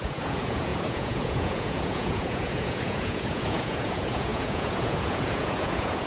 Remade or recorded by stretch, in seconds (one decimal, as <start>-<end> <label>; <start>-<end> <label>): 0.0-6.1 remade